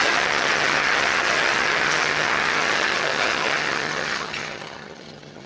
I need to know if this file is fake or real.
fake